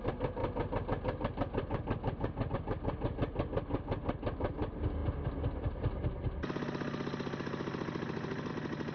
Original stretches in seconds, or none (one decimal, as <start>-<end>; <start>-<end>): 0.0-8.9